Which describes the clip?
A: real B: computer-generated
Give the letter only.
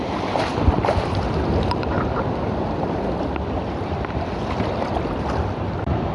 B